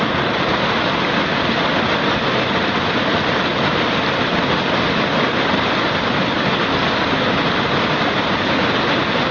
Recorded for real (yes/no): yes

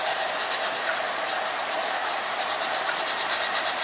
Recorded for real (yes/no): yes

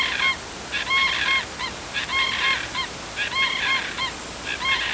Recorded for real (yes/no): yes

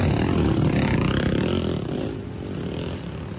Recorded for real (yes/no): yes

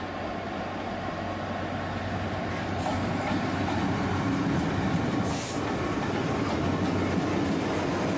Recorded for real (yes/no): yes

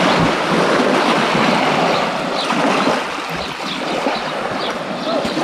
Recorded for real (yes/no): yes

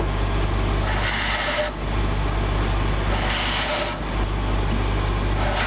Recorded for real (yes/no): yes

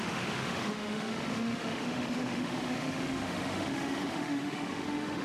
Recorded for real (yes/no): no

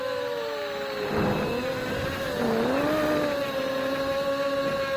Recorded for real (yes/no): yes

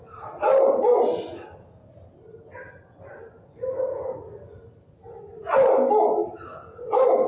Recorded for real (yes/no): yes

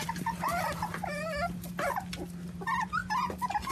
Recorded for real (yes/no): yes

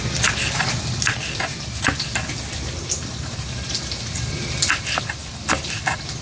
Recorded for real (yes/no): yes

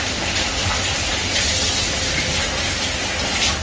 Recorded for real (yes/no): yes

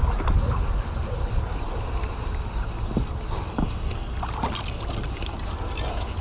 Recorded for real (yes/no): yes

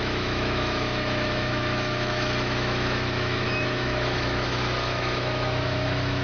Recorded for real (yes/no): no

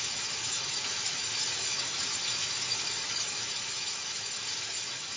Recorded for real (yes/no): no